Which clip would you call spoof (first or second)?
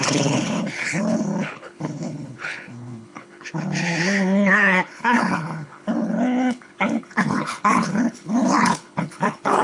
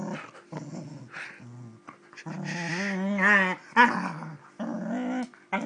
first